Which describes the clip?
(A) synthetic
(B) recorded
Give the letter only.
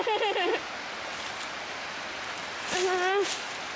B